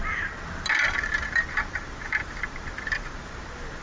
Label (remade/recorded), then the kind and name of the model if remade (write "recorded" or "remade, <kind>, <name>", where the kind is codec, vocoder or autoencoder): recorded